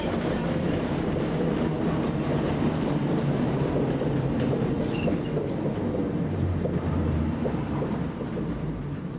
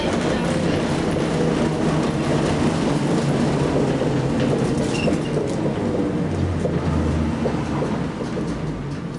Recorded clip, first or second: second